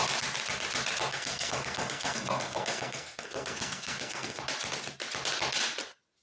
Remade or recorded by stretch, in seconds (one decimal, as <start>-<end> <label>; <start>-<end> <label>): 0.0-1.1 recorded; 1.1-4.4 remade; 4.4-6.2 recorded